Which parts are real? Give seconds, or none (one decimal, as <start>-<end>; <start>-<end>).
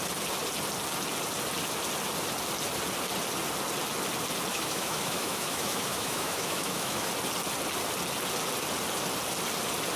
0.0-4.5; 7.1-10.0